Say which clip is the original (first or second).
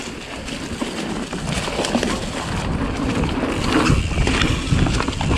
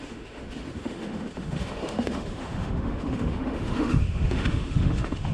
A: first